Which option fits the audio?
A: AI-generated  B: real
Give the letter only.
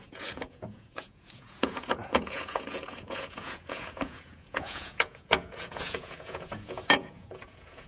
A